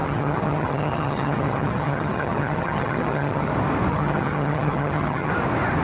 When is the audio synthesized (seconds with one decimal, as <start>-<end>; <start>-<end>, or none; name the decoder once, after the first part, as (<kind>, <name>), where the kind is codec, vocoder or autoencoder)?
0.0-3.5 (vocoder, HiFi-GAN); 3.9-5.3